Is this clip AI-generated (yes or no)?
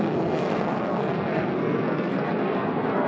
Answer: yes